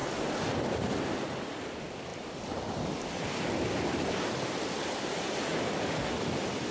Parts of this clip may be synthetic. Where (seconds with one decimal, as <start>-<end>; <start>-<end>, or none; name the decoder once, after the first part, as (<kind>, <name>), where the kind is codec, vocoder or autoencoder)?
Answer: none